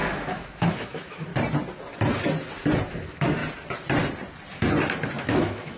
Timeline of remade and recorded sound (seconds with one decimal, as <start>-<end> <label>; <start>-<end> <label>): 0.0-1.3 remade; 1.3-2.9 recorded; 2.9-3.4 remade; 3.4-5.2 recorded; 5.2-5.8 remade

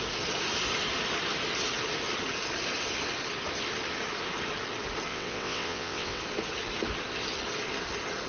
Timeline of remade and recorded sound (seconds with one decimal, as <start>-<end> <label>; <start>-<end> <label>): 0.0-5.1 recorded; 5.1-6.2 remade; 6.2-8.3 recorded

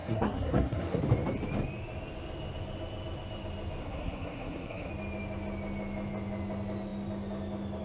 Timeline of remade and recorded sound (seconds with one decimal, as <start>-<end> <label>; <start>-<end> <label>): 0.0-1.0 remade; 1.0-3.8 recorded; 3.8-4.9 remade; 4.9-7.8 recorded

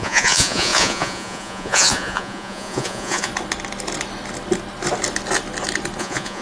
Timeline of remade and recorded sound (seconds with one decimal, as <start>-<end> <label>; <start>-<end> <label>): 0.0-3.3 remade; 3.3-6.0 recorded; 6.0-6.4 remade

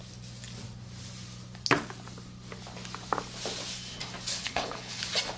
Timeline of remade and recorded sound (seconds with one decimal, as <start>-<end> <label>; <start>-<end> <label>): 0.0-4.3 recorded; 4.3-5.0 remade; 5.0-5.4 recorded

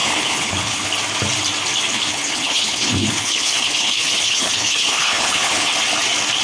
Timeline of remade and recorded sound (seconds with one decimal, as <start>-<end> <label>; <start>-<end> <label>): 0.0-0.9 remade; 0.9-1.9 recorded; 1.9-5.7 remade; 5.7-6.4 recorded